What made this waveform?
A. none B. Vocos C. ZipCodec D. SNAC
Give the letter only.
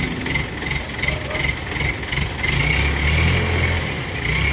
A